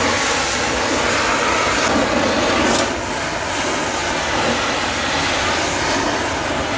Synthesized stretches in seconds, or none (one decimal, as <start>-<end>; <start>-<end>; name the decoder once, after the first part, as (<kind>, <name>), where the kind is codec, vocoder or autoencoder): none